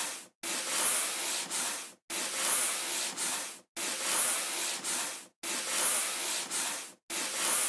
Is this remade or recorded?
recorded